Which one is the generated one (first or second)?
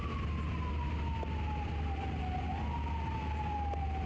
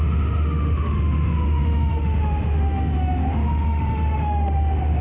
second